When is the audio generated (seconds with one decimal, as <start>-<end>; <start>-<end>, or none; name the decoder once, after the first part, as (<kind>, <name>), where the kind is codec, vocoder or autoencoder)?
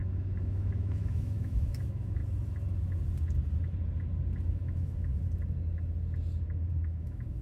0.0-2.2 (autoencoder, DAC-VAE); 4.5-5.1; 6.7-7.4